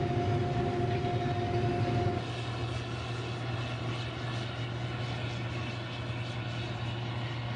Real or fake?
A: real